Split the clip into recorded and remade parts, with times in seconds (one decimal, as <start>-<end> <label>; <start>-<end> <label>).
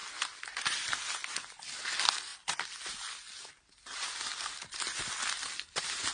0.0-6.1 recorded